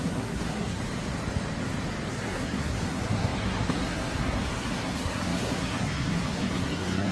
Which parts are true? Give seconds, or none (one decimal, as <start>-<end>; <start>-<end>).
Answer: 0.8-2.1